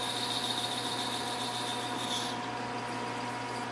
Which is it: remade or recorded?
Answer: recorded